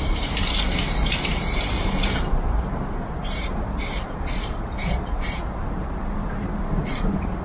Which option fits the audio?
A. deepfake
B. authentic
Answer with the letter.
A